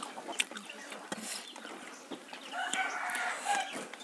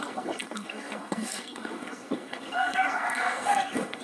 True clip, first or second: first